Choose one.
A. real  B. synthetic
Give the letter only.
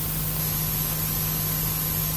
A